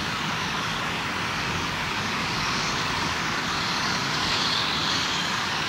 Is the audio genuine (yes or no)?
no